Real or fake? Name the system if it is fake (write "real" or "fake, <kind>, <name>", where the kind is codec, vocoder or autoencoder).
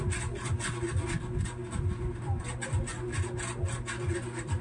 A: real